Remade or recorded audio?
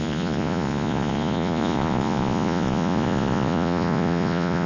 remade